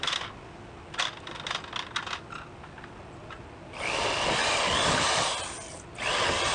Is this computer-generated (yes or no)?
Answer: no